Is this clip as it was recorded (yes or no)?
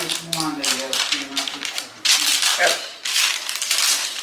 yes